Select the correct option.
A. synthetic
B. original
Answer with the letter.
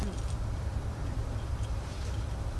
A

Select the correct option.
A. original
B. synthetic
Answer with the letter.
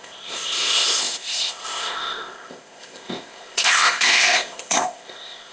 B